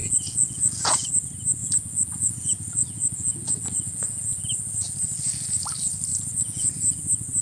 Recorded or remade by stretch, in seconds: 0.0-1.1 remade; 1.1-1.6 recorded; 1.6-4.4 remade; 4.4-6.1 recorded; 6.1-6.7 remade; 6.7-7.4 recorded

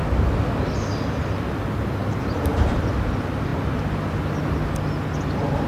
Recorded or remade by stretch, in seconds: 0.0-2.0 recorded; 2.0-2.9 remade; 2.9-5.7 recorded

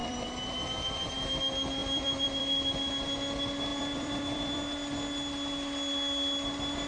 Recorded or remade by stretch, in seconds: 0.0-1.4 remade; 1.4-1.8 recorded; 1.8-2.9 remade; 2.9-3.7 recorded; 3.7-4.6 remade; 4.6-6.9 recorded

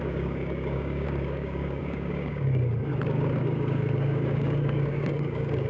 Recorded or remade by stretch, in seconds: 0.0-5.7 remade

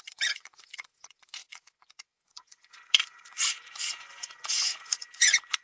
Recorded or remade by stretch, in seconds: 0.0-5.6 remade

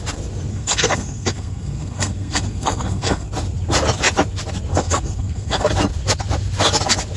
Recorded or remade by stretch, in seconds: 0.0-0.5 recorded; 0.5-3.3 remade; 3.3-4.7 recorded; 4.7-5.7 remade; 5.7-7.2 recorded

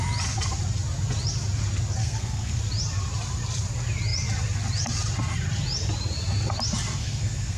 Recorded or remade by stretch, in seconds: 0.0-2.0 recorded; 2.0-2.6 remade; 2.6-7.0 recorded; 7.0-7.6 remade